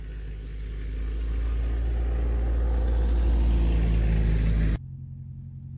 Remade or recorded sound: recorded